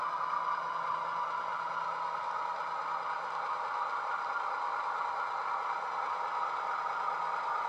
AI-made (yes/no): no